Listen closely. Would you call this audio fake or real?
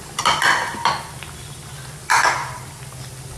real